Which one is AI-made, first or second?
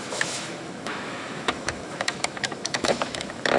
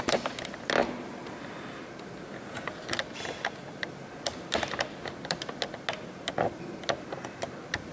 first